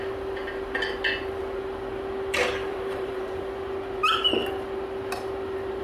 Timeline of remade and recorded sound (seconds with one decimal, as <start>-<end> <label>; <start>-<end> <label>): 0.0-2.7 recorded; 2.7-3.4 remade; 3.4-5.8 recorded